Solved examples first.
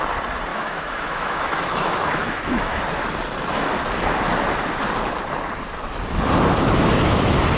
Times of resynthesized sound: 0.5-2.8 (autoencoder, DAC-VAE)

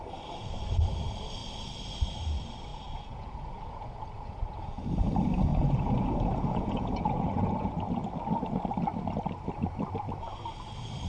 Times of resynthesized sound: 2.7-5.1 (vocoder, Vocos); 5.5-8.0

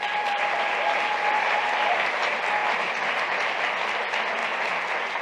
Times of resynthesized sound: none

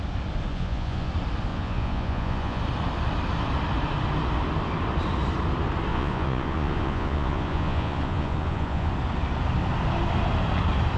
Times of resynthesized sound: 0.5-1.1 (vocoder, Vocos); 1.5-2.6; 5.9-8.9

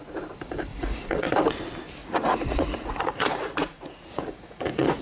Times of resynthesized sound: 0.7-1.3 (vocoder, Vocos); 2.0-5.0

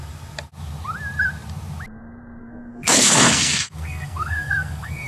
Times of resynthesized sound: 2.4-5.1 (codec, SNAC)